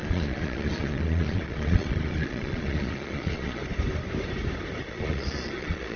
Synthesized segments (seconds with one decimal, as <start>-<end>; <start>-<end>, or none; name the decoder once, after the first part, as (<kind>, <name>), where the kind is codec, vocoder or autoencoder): 0.0-3.6 (vocoder, Vocos); 4.9-6.0